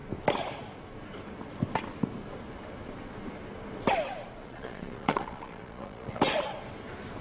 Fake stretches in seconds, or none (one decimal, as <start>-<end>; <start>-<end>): 4.4-6.2